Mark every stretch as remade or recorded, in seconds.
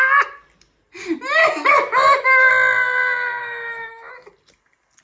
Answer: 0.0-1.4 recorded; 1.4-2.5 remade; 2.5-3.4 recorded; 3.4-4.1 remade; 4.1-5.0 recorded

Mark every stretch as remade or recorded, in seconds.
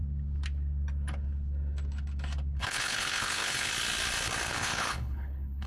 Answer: 0.0-2.6 recorded; 2.6-3.7 remade; 3.7-4.5 recorded; 4.5-5.7 remade